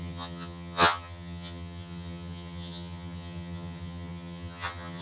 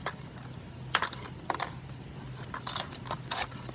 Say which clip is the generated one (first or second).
first